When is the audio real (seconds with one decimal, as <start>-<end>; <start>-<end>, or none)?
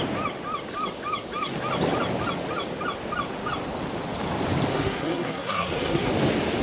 0.0-4.7; 6.1-6.6